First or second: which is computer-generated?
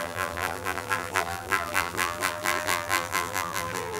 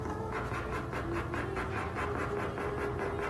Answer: first